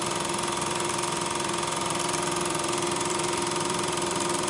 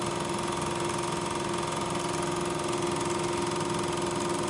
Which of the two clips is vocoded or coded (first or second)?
first